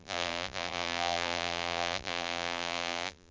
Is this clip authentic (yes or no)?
no